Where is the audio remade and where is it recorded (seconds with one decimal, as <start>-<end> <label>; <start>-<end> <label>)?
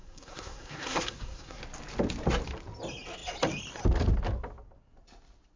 0.0-1.6 remade; 1.6-5.6 recorded